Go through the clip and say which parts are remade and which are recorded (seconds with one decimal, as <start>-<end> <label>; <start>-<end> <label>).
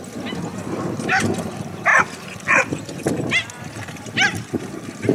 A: 0.0-5.1 recorded